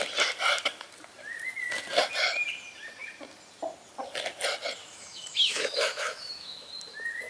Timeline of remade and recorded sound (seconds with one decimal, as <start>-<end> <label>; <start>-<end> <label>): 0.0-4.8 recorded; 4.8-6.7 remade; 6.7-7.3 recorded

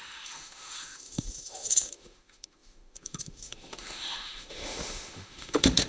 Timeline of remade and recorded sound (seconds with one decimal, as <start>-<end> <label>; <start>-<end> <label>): 0.0-5.9 remade

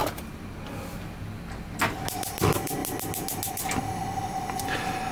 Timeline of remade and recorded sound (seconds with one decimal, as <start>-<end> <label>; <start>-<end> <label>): 0.0-5.1 recorded

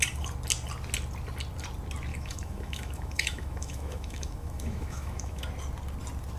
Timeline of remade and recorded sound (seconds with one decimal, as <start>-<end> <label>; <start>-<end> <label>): 0.0-2.1 recorded; 2.1-5.4 remade; 5.4-6.4 recorded

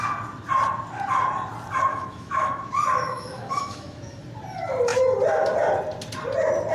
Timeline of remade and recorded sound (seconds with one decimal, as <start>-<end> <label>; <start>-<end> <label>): 0.0-1.9 recorded; 1.9-4.2 remade; 4.2-6.7 recorded

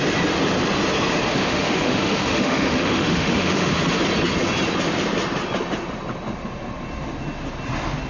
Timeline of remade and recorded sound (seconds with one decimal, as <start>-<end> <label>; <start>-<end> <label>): 0.0-1.3 recorded; 1.3-3.8 remade; 3.8-8.1 recorded

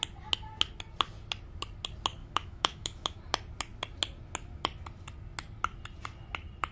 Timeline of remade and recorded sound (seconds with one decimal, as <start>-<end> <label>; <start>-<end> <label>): 0.0-2.2 recorded; 2.2-3.2 remade; 3.2-6.7 recorded